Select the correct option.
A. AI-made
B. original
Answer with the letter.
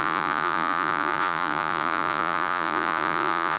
A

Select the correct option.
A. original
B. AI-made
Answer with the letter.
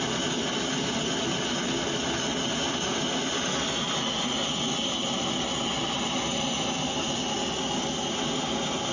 A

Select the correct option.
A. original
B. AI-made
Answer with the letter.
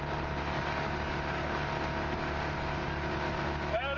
A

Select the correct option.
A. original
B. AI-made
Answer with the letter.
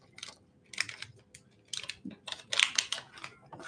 A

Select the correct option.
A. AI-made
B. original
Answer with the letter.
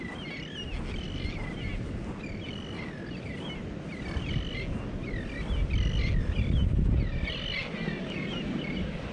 B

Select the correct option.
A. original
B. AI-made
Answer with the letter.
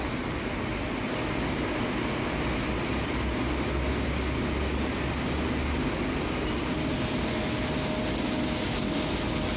A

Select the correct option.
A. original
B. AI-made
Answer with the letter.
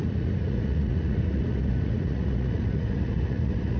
B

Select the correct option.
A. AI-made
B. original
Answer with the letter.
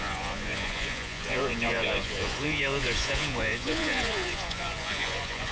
A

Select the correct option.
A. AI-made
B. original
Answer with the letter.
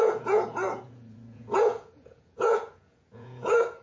A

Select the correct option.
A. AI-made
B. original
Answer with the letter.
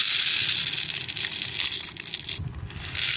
B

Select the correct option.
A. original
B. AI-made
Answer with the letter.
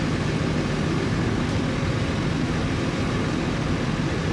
A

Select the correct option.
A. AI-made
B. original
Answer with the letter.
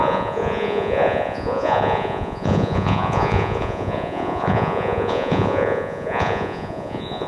A